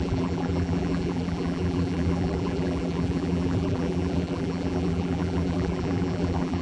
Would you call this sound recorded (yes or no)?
no